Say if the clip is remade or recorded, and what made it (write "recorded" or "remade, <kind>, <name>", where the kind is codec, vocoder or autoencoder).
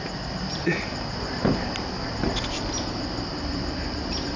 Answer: remade, vocoder, BigVGAN v2